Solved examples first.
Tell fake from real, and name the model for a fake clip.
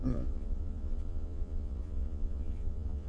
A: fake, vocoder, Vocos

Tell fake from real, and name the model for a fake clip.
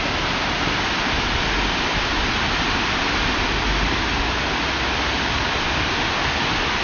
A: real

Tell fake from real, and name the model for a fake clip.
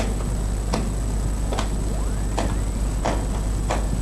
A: real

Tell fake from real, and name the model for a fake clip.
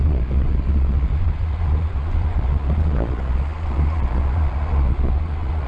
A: fake, vocoder, Vocos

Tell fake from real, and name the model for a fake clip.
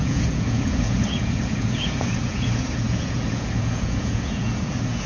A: fake, vocoder, Vocos